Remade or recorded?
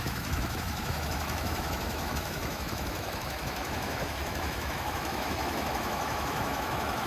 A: remade